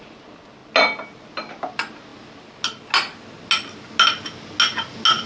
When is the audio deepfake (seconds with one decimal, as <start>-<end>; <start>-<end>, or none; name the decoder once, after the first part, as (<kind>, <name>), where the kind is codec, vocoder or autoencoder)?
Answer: none